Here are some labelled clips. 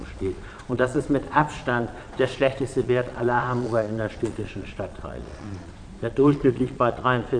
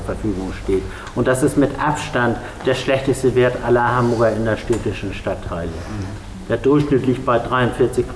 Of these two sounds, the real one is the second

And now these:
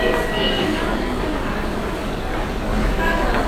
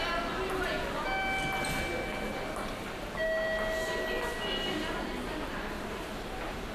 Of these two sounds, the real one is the second